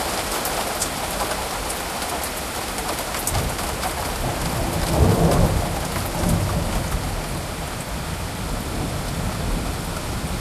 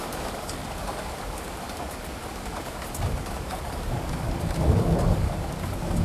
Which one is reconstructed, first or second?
second